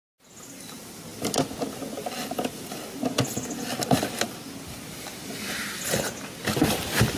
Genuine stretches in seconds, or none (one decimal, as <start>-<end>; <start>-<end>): 0.0-7.2